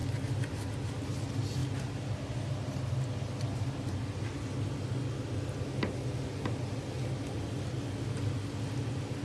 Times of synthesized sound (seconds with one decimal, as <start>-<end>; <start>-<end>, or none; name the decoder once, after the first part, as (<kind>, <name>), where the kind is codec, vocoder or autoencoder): 0.0-0.9 (vocoder, BigVGAN v2)